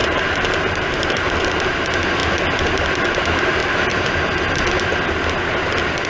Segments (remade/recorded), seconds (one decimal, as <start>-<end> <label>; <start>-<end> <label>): 0.0-1.6 remade; 1.6-3.6 recorded; 3.6-4.2 remade; 4.2-6.1 recorded